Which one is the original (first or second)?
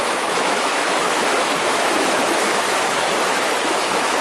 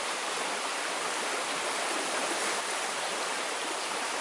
second